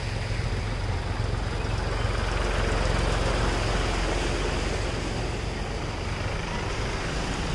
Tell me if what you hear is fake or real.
real